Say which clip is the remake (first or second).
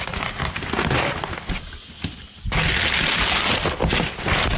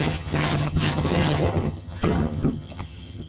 second